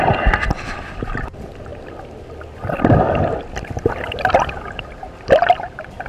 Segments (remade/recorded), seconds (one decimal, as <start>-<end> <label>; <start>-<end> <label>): 0.0-6.1 recorded